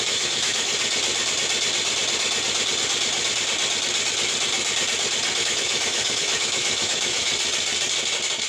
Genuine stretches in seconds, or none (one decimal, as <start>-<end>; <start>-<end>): 0.7-5.4; 7.3-8.5